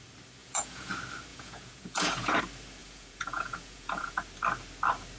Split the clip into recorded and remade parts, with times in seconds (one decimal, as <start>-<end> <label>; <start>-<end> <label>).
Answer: 0.0-0.4 recorded; 0.4-0.9 remade; 0.9-1.3 recorded; 1.3-2.4 remade; 2.4-2.8 recorded; 2.8-4.2 remade; 4.2-5.2 recorded